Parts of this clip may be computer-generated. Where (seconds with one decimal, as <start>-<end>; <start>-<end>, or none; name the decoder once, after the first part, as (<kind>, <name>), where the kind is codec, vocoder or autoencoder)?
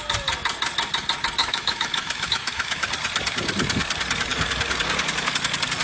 1.4-2.9 (autoencoder, DAC-VAE)